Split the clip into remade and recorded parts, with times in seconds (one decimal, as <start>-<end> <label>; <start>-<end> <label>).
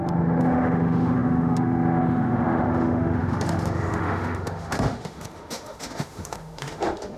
0.0-7.2 remade